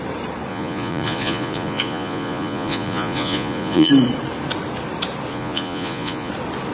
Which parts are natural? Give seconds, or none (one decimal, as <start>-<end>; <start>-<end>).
0.0-0.5; 3.9-5.3; 6.3-6.7